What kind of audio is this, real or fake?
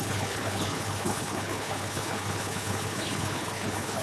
fake